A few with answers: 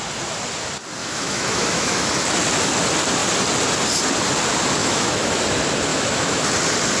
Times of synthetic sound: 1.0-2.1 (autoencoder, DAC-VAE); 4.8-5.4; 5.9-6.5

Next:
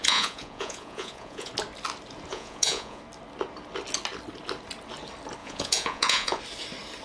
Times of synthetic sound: 0.0-1.5 (vocoder, Vocos); 2.3-3.0; 5.4-6.4